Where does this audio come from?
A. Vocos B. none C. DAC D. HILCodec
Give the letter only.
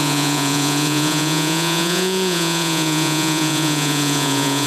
A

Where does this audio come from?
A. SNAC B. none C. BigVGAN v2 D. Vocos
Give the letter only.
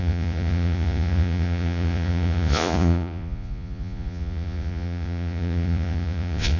D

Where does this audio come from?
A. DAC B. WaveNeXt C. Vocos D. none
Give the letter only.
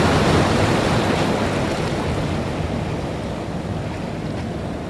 D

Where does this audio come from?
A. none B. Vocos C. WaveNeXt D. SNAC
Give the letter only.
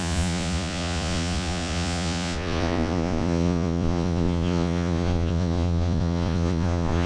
B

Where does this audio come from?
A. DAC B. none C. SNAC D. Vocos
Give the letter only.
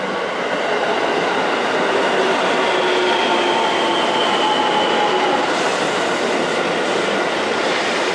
B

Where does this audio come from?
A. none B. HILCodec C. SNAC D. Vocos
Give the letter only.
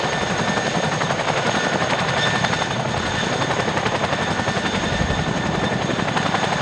A